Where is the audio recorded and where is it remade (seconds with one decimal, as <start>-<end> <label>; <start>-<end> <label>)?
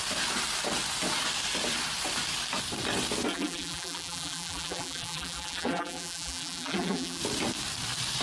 0.0-3.3 recorded; 3.3-7.2 remade; 7.2-8.2 recorded